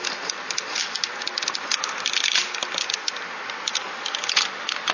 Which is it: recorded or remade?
recorded